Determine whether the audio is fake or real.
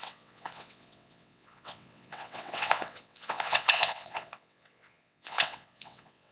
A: fake